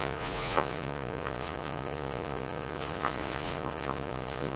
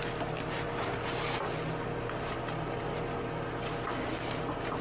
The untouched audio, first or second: second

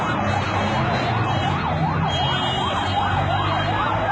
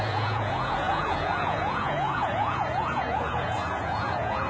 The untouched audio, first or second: first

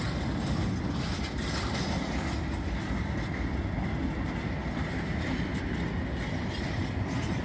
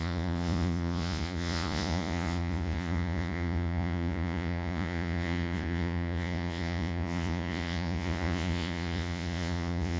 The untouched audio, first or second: first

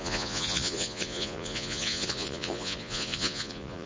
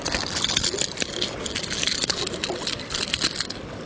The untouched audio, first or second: second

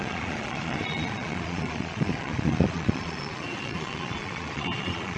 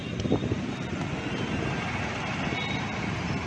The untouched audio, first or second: second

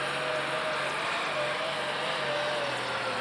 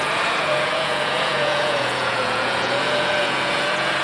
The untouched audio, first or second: first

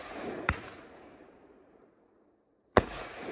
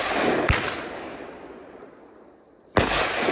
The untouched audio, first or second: second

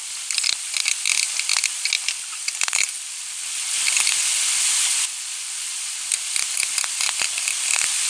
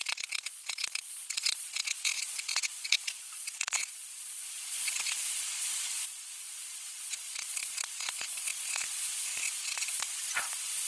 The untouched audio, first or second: first